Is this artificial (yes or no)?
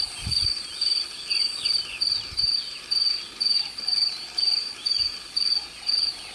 no